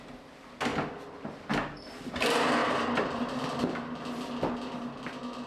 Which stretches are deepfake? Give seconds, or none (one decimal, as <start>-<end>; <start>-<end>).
2.6-3.2

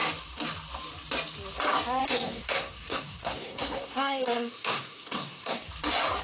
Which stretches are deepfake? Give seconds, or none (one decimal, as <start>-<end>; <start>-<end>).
2.0-5.7

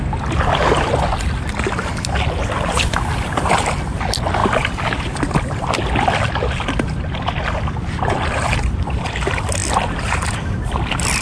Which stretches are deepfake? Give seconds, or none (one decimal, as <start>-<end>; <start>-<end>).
none

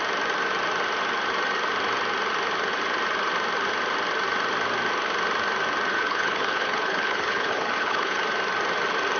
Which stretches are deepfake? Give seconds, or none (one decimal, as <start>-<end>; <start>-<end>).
5.9-8.2

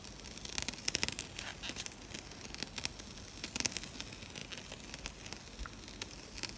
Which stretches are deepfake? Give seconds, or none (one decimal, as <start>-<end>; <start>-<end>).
none